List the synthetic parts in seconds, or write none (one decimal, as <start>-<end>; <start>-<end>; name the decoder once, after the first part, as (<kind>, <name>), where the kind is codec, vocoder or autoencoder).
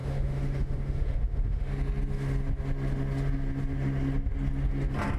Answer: 0.0-1.7 (autoencoder, DAC-VAE)